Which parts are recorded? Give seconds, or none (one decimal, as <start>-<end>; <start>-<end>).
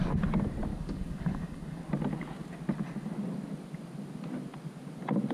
0.0-0.7; 1.8-5.3